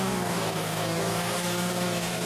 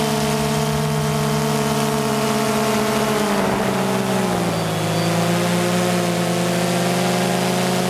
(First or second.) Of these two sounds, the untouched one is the second